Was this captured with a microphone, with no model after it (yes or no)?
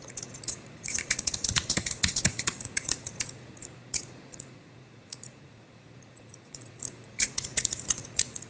no